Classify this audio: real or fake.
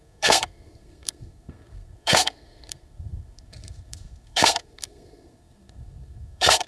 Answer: fake